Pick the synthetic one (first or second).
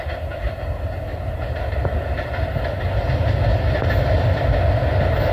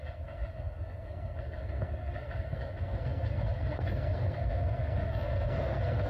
second